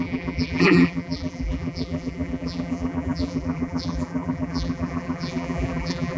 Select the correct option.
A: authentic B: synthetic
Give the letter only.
B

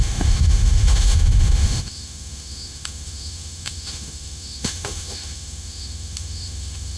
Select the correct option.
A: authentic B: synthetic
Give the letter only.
B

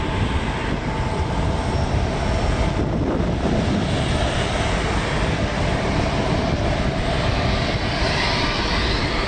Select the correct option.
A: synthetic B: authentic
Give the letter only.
B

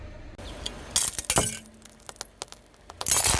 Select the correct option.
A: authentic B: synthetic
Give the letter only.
A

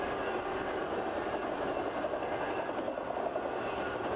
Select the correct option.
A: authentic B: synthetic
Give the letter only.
A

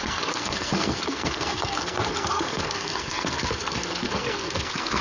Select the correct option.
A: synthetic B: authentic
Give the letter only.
A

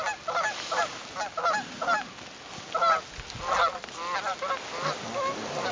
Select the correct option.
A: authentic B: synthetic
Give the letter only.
A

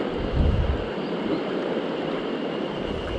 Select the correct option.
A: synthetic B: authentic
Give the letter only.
B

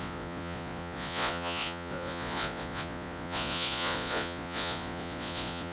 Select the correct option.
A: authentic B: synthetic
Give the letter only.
B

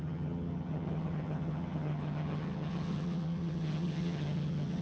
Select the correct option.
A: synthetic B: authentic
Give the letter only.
A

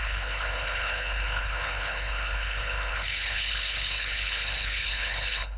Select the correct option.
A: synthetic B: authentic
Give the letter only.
A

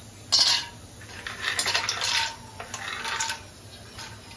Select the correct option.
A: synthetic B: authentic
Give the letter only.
B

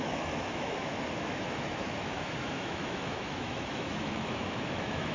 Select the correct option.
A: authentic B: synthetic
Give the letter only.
B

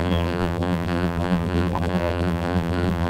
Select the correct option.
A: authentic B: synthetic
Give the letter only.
B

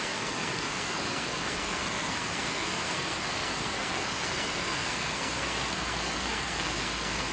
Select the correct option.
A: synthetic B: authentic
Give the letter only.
A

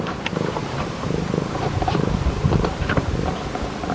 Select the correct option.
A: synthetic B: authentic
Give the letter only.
A